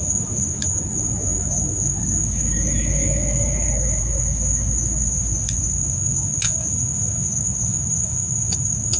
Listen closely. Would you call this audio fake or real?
fake